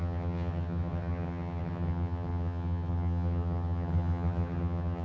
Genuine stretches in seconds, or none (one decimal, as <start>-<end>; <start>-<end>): none